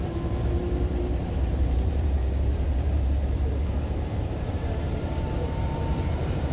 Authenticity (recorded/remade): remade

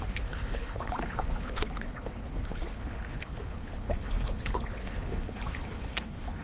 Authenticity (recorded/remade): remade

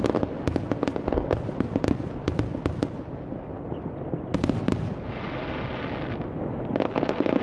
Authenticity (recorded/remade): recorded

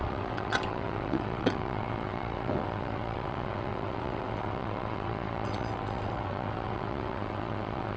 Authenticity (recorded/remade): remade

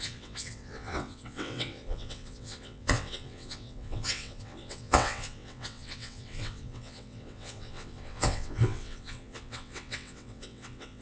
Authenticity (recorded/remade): remade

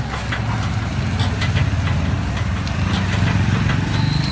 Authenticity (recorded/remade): recorded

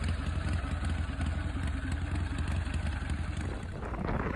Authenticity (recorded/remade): recorded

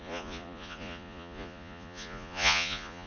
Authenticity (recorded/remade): remade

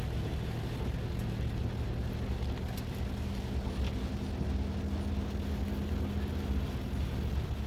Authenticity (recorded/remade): recorded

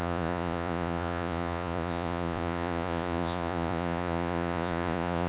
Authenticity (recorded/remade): remade